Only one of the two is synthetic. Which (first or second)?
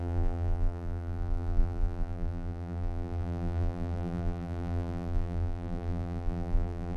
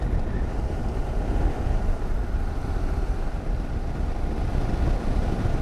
first